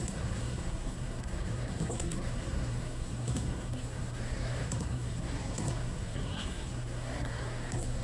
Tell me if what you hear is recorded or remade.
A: remade